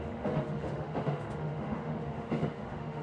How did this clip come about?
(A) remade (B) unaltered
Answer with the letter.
A